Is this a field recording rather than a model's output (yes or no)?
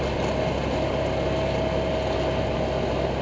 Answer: yes